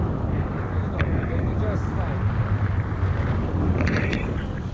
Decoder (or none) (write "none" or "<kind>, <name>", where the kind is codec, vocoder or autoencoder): none